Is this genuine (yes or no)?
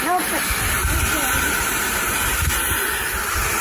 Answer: yes